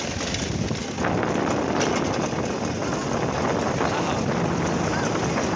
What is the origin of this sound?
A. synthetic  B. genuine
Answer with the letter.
B